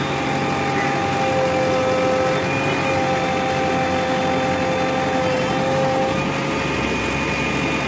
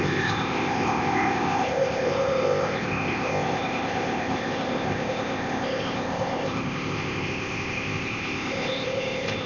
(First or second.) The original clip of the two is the first